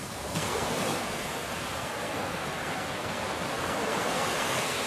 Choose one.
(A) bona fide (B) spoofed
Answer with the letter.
B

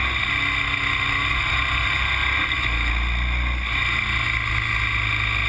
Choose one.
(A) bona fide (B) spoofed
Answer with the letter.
A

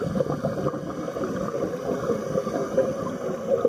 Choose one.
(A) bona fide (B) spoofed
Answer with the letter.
A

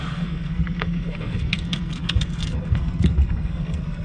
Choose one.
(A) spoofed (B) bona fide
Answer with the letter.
A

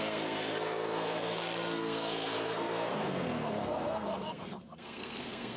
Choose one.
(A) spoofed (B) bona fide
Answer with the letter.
A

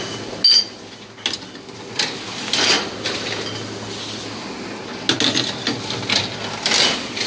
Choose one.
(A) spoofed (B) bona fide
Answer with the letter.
B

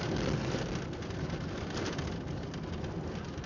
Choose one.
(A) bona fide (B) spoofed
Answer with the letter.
A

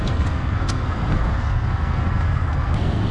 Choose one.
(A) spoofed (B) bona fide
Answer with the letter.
A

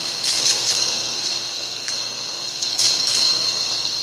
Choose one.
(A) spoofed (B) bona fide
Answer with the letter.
A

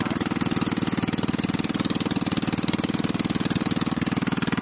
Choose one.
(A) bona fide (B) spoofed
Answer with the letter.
A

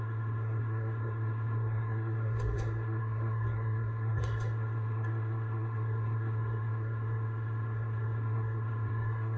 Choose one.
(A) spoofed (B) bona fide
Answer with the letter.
A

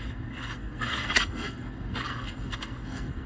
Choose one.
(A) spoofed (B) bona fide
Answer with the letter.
A